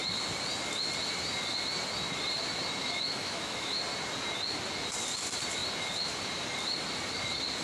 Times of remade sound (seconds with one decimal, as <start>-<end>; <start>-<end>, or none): 2.8-3.8